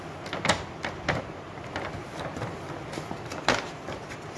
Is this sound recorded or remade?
remade